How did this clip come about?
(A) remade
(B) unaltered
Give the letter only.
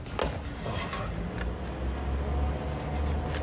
B